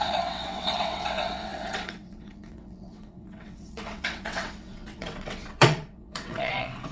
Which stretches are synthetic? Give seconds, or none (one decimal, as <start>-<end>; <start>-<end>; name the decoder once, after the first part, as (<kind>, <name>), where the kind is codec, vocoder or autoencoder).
0.0-6.9 (vocoder, WaveNeXt)